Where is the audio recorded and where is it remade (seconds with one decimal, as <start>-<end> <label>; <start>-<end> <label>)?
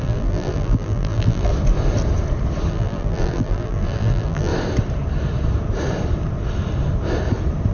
0.0-1.5 remade; 1.5-2.7 recorded; 2.7-4.5 remade; 4.5-7.7 recorded